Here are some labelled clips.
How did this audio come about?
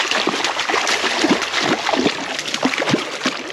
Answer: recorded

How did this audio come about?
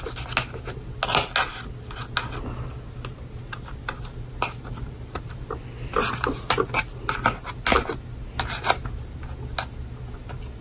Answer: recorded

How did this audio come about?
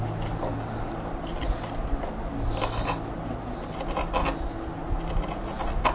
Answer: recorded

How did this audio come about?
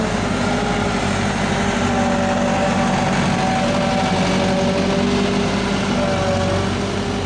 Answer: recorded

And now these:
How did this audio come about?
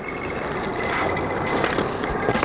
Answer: recorded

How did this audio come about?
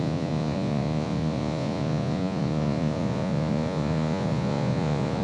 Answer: remade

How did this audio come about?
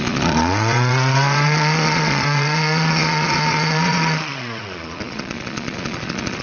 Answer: remade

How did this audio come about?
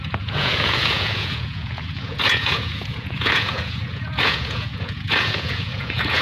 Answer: remade